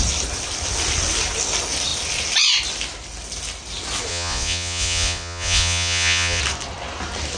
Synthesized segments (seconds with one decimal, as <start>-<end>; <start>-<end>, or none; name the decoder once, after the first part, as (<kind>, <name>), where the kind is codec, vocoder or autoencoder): 4.1-6.4 (vocoder, Vocos)